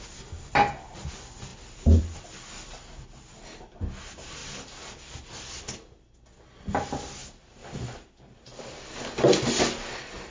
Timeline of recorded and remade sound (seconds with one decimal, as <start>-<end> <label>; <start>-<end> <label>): 0.0-1.5 recorded; 1.5-2.0 remade; 2.0-4.4 recorded; 4.4-5.5 remade; 5.5-10.3 recorded